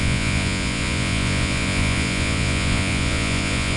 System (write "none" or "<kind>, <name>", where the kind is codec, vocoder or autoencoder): vocoder, Vocos